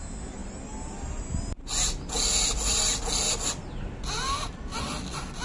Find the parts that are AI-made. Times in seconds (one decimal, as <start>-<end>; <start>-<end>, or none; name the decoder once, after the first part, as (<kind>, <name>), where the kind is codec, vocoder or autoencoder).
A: none